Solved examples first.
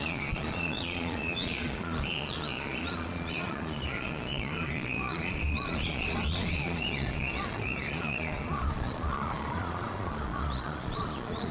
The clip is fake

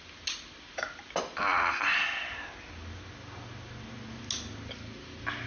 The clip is real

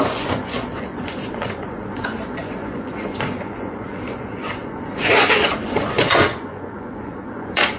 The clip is fake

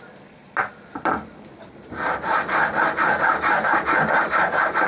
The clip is real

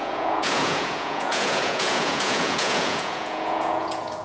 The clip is fake